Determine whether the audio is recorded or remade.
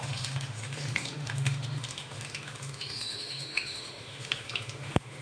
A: remade